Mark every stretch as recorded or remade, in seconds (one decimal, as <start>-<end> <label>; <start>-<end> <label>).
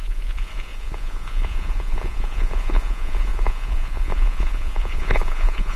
0.0-5.8 remade